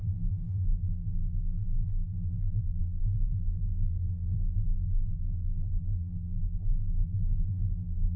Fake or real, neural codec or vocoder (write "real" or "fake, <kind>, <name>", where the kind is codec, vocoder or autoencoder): fake, vocoder, BigVGAN v2